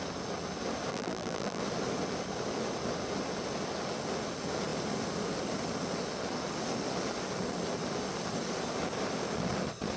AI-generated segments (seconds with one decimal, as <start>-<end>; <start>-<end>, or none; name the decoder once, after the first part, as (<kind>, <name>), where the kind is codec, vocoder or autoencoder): 0.9-1.6 (vocoder, BigVGAN v2)